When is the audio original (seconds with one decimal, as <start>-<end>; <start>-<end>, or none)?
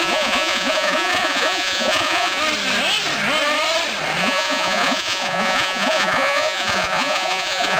2.4-4.2